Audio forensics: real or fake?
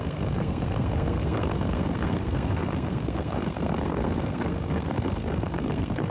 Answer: fake